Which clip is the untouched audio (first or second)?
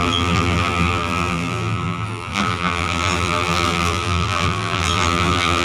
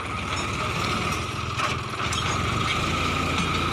second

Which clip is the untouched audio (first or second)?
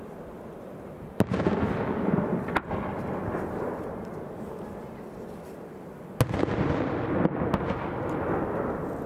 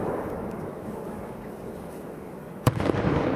first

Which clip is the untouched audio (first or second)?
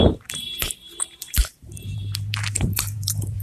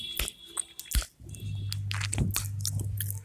second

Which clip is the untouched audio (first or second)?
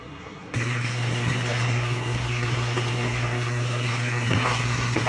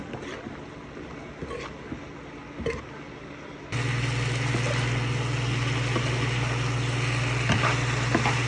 second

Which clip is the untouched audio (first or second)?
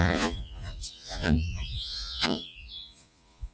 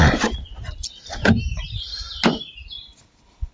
second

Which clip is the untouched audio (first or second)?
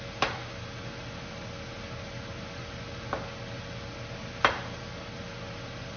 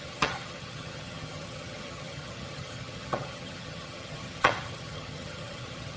first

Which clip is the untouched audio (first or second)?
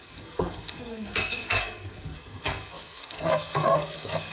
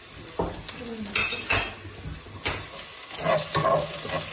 second